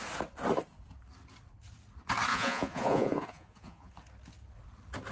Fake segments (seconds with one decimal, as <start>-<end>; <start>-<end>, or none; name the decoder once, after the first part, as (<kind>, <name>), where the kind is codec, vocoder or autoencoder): 2.3-3.9 (vocoder, Vocos)